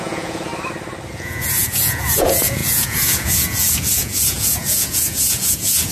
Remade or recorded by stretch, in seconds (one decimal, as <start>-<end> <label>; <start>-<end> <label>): 0.0-0.5 remade; 0.5-1.1 recorded; 1.1-5.9 remade